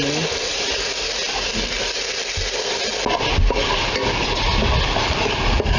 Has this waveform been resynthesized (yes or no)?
no